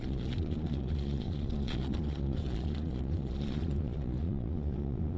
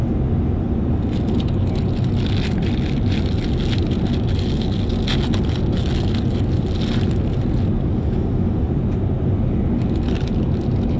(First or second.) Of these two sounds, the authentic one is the second